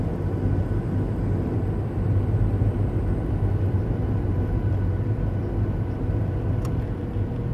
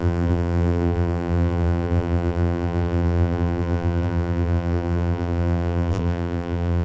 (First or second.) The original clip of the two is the first